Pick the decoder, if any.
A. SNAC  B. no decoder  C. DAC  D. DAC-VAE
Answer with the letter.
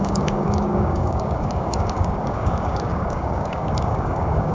C